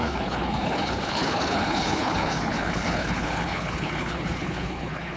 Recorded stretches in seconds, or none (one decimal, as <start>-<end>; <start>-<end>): none